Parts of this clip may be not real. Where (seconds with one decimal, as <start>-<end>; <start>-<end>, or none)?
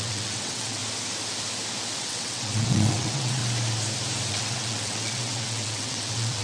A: 0.0-0.8; 2.0-3.4; 4.3-6.4